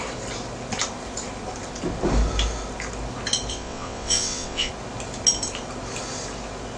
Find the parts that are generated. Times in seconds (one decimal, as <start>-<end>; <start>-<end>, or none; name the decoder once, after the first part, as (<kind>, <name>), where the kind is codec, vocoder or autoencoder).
3.5-4.7 (vocoder, WaveNeXt)